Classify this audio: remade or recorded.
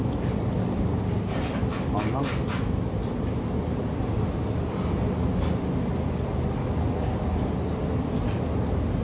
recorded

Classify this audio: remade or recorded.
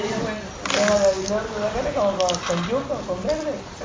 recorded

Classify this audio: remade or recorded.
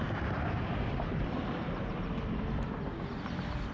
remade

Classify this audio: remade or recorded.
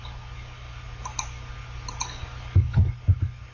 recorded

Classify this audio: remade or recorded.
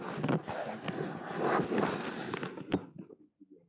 recorded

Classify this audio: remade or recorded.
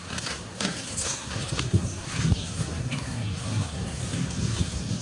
remade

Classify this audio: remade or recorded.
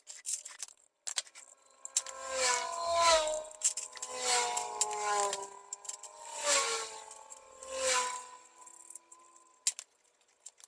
recorded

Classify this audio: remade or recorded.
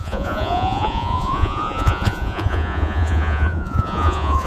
remade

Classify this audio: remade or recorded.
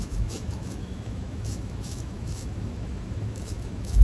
remade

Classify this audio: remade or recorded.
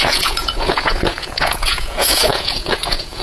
remade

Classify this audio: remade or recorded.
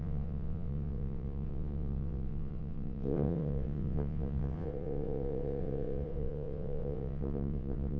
remade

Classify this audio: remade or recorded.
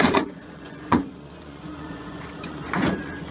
remade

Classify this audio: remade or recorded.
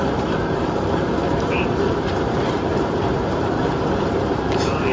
remade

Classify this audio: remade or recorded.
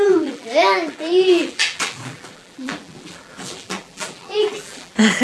remade